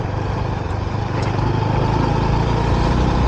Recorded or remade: recorded